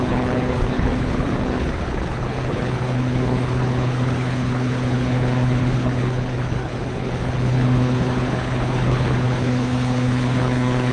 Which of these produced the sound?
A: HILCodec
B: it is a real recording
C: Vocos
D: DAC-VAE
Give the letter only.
A